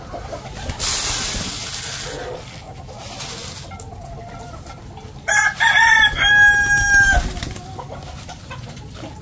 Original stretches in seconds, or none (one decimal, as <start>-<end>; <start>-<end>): 0.0-9.2